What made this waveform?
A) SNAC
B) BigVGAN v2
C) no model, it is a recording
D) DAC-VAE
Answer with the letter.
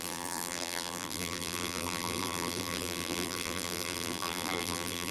B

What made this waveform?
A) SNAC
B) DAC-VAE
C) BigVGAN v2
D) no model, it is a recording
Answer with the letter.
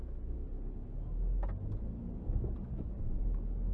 D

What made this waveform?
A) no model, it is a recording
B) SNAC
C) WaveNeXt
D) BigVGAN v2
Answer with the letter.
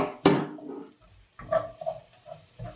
A